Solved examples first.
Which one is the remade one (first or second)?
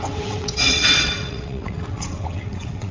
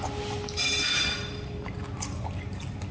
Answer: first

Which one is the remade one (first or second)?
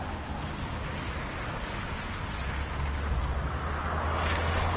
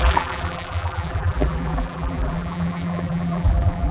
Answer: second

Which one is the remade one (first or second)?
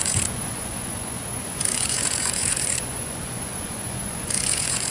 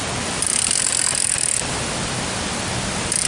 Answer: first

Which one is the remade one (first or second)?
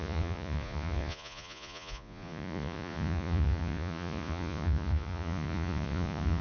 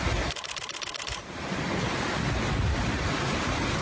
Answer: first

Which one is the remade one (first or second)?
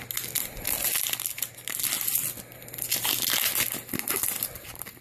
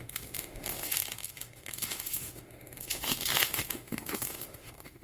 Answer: second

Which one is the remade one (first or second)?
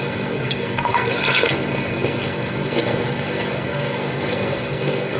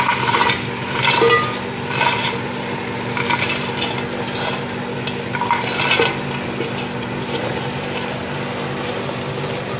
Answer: first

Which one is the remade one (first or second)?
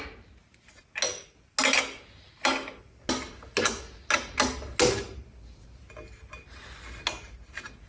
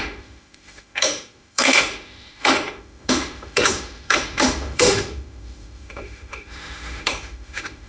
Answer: second